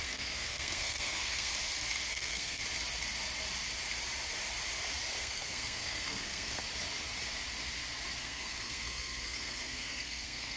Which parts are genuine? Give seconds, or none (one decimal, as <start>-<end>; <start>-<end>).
1.5-2.1; 2.6-5.2; 6.6-8.2